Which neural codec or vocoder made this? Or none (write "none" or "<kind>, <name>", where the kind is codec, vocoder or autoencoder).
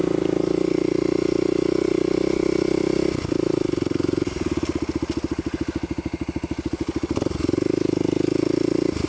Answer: none